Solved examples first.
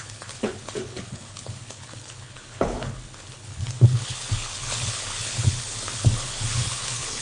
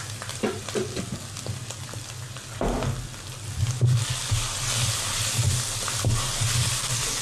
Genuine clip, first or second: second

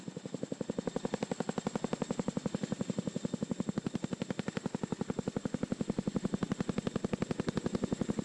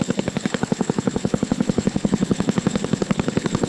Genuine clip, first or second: first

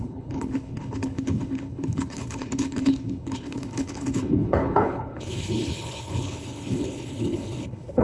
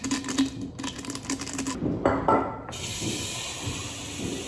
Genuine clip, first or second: second